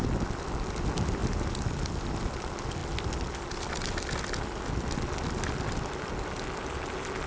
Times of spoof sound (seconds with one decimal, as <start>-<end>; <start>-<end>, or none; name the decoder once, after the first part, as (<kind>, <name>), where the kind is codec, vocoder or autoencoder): none